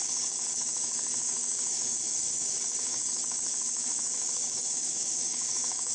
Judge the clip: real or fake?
fake